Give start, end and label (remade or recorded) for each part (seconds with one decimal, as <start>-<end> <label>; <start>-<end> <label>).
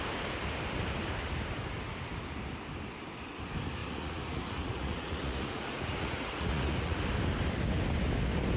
0.0-3.8 recorded; 3.8-7.0 remade; 7.0-8.6 recorded